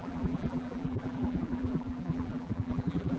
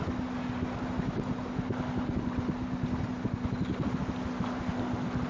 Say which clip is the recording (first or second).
second